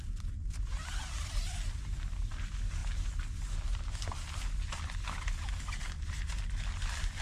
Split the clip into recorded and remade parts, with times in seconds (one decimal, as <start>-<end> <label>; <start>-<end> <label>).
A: 0.0-7.2 recorded